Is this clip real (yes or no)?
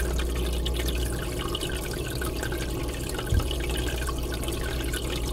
yes